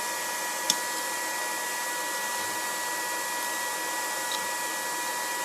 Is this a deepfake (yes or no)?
no